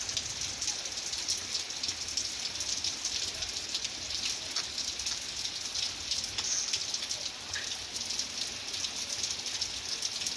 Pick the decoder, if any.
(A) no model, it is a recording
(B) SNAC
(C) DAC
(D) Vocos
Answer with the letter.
A